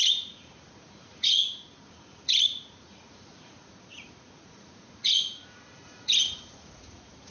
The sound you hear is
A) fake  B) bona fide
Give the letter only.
A